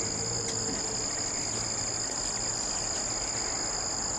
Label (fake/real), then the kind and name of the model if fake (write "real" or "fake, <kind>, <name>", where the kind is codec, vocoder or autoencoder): real